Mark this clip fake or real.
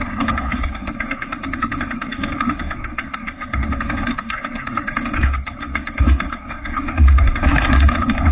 fake